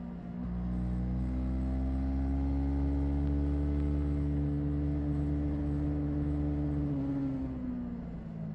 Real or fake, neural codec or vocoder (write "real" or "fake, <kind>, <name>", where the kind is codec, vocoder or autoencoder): real